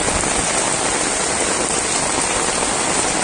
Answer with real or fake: real